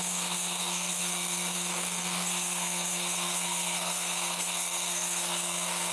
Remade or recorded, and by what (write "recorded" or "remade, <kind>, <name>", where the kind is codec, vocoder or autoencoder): remade, codec, SNAC